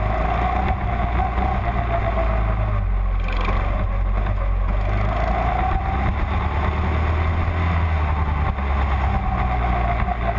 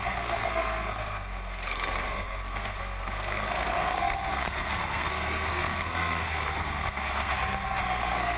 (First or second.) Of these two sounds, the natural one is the first